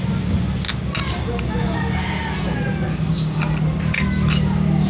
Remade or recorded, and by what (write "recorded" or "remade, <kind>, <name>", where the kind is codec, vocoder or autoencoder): recorded